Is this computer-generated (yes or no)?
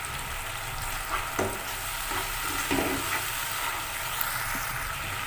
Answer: no